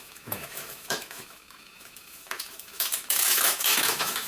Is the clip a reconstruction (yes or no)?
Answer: yes